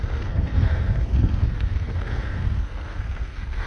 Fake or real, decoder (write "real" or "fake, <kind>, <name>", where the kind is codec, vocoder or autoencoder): fake, codec, SNAC